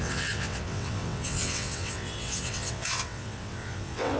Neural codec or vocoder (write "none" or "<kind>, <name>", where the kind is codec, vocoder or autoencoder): vocoder, WaveNeXt